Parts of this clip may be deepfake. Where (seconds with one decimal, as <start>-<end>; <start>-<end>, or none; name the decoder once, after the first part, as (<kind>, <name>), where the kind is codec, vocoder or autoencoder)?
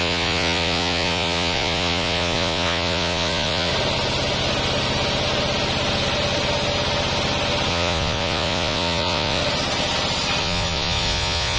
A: 0.0-3.7 (vocoder, Vocos); 7.7-9.4; 10.4-11.6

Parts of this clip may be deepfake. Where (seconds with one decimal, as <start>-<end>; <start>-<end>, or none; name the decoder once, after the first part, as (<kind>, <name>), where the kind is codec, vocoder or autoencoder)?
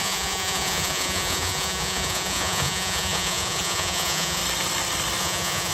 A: 0.0-4.4 (vocoder, Vocos); 5.2-5.7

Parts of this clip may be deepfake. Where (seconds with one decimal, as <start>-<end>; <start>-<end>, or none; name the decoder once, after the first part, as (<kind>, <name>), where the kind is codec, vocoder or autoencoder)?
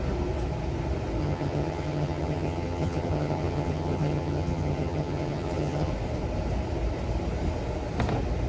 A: 1.2-5.9 (vocoder, HiFi-GAN)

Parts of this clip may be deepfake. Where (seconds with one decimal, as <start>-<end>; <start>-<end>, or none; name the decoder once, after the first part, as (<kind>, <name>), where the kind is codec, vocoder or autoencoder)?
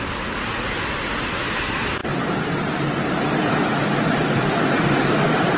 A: 2.0-3.1 (vocoder, BigVGAN v2)